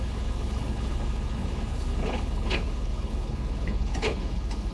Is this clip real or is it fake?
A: fake